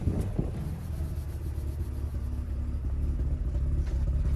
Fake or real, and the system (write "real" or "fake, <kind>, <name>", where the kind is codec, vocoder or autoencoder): real